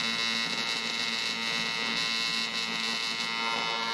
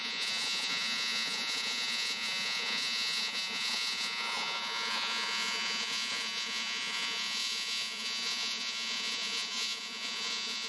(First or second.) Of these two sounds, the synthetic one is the second